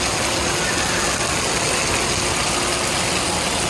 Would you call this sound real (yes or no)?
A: yes